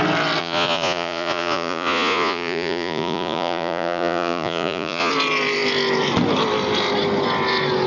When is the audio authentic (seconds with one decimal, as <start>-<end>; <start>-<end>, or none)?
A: 0.0-0.4; 5.1-7.9